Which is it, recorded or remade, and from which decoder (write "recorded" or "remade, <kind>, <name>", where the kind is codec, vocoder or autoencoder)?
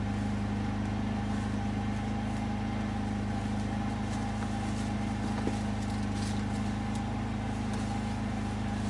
recorded